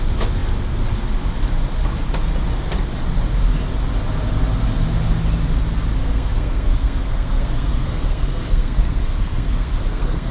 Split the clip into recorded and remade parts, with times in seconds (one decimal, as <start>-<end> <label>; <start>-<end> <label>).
0.0-5.9 recorded; 5.9-10.3 remade